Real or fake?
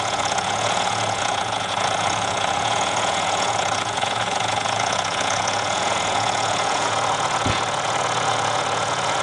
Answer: fake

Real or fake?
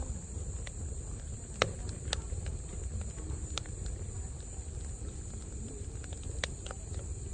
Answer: real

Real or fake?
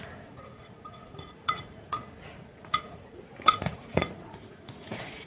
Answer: fake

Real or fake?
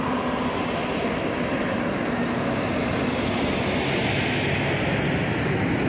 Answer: real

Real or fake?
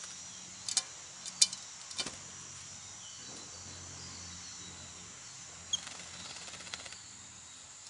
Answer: real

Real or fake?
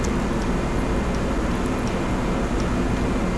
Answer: real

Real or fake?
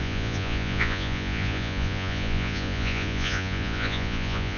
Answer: fake